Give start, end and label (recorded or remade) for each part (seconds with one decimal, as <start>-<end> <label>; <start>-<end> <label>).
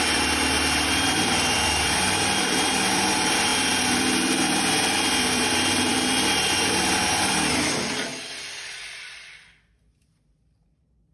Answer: 0.0-11.1 remade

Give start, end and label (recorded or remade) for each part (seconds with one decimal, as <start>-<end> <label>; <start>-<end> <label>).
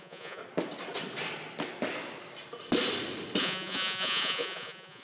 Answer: 0.0-0.4 remade; 0.4-3.4 recorded; 3.4-5.0 remade